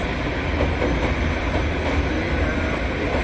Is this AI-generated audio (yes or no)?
no